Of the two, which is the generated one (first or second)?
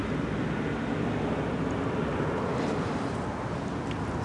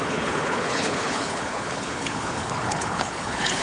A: second